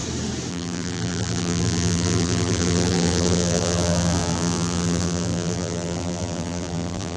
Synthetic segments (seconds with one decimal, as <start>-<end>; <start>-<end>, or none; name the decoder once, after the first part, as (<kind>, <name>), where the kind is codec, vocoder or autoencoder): 0.5-7.2 (vocoder, BigVGAN v2)